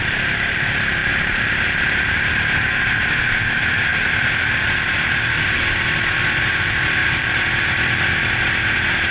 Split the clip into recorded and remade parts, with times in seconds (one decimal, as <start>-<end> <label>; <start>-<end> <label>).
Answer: 0.0-1.0 recorded; 1.0-2.8 remade; 2.8-7.0 recorded; 7.0-7.5 remade; 7.5-9.1 recorded